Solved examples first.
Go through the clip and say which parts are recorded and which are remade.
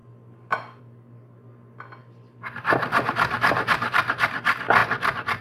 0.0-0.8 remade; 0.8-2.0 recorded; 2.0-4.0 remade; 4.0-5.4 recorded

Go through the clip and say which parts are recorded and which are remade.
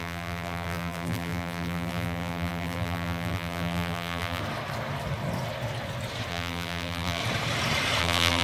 0.0-4.4 remade; 4.4-6.3 recorded; 6.3-7.2 remade; 7.2-8.0 recorded; 8.0-8.4 remade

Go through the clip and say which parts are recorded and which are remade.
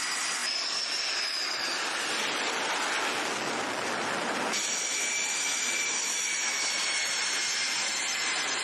0.0-8.6 recorded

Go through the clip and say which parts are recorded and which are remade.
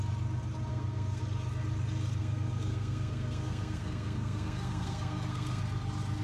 0.0-0.7 recorded; 0.7-1.2 remade; 1.2-2.2 recorded; 2.2-5.6 remade; 5.6-6.2 recorded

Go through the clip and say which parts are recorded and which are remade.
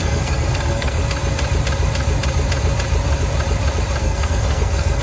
0.0-1.0 remade; 1.0-4.0 recorded; 4.0-5.0 remade